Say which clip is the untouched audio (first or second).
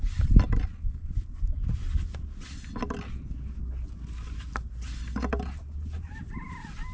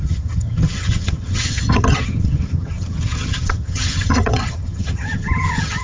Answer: first